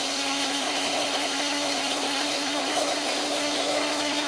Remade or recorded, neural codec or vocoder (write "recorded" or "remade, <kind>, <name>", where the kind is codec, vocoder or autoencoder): remade, codec, SNAC